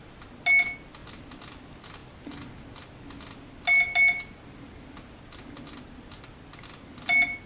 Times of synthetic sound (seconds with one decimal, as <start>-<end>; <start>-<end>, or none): none